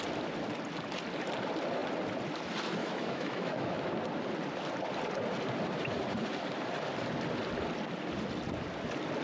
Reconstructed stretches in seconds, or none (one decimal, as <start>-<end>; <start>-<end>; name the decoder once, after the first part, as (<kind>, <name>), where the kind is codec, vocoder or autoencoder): 2.8-3.9 (autoencoder, DAC-VAE)